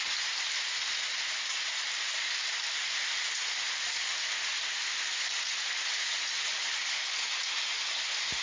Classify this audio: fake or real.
real